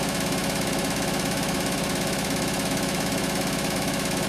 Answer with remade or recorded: remade